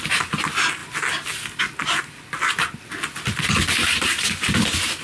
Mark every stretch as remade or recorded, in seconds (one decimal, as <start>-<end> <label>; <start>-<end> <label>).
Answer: 0.0-5.0 recorded